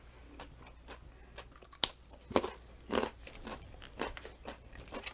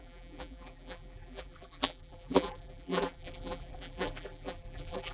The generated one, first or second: second